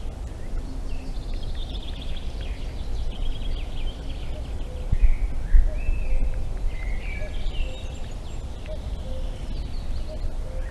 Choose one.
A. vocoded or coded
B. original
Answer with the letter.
B